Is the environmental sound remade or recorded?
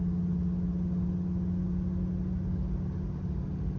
recorded